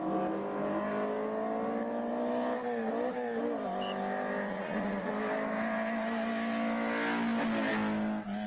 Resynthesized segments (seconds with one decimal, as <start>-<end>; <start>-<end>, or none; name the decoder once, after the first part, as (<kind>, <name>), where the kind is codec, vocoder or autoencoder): 4.5-5.1 (vocoder, Vocos)